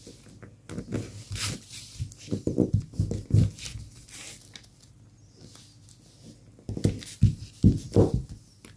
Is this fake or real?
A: real